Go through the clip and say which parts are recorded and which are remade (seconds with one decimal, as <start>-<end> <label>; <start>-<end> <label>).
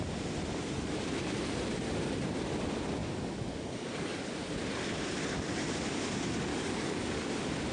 0.0-3.0 recorded; 3.0-4.3 remade; 4.3-6.5 recorded; 6.5-7.3 remade; 7.3-7.7 recorded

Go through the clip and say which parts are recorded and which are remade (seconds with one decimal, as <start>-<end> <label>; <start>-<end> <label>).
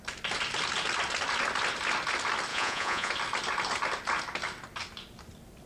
0.0-2.5 recorded; 2.5-3.1 remade; 3.1-5.7 recorded